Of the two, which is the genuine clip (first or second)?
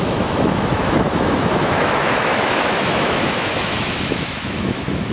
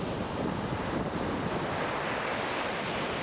second